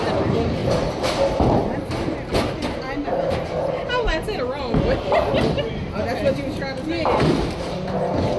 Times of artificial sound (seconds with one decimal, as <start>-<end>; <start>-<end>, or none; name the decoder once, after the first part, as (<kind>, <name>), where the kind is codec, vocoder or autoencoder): none